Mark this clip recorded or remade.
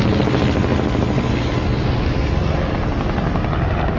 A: recorded